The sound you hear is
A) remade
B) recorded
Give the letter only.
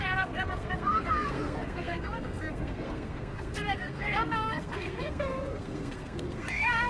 A